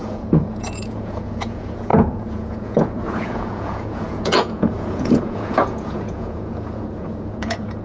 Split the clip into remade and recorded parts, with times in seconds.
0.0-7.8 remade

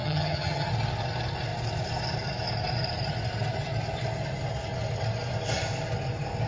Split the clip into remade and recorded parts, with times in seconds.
0.0-0.7 remade; 0.7-6.5 recorded

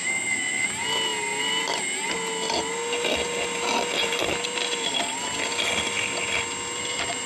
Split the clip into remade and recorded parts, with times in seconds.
0.0-7.3 recorded

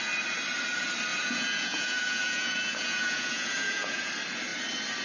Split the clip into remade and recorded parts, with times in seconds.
0.0-1.1 recorded; 1.1-4.1 remade; 4.1-5.0 recorded

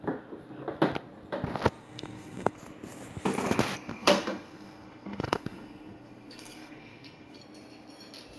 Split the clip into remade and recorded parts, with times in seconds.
0.0-1.8 recorded; 1.8-2.6 remade; 2.6-3.9 recorded; 3.9-7.4 remade; 7.4-8.4 recorded